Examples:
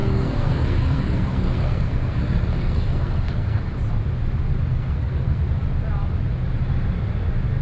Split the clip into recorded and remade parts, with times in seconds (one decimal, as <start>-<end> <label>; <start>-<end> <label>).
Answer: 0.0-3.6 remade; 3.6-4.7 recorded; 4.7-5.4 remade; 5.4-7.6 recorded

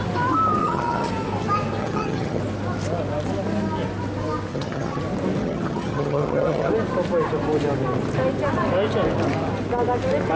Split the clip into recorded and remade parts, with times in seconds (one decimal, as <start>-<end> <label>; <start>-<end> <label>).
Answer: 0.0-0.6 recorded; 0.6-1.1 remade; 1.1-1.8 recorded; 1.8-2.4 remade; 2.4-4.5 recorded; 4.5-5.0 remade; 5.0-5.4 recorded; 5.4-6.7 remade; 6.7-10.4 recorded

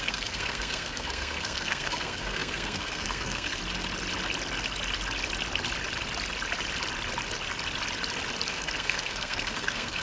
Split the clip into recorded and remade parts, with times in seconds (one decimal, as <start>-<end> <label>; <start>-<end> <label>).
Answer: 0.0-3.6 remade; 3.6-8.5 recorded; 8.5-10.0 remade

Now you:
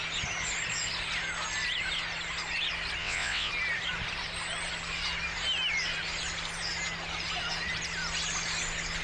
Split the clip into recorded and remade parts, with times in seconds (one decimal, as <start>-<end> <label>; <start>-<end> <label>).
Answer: 0.0-3.0 recorded; 3.0-3.5 remade; 3.5-9.0 recorded

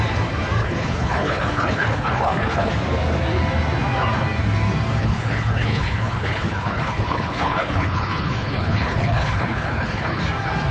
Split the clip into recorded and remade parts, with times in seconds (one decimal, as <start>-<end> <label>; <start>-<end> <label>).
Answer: 0.0-0.6 recorded; 0.6-2.7 remade; 2.7-5.0 recorded; 5.0-10.2 remade; 10.2-10.7 recorded